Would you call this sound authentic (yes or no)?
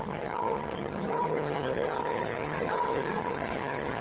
no